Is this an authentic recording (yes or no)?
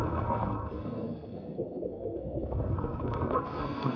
no